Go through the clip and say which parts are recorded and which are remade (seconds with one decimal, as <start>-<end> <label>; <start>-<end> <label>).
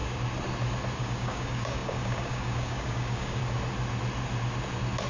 0.0-1.0 recorded; 1.0-3.4 remade; 3.4-5.1 recorded